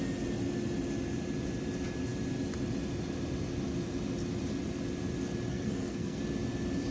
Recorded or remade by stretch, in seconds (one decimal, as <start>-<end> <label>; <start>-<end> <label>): 0.0-5.5 recorded; 5.5-6.2 remade; 6.2-6.9 recorded